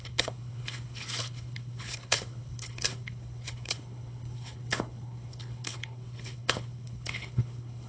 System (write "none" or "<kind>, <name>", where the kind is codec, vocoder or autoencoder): codec, HILCodec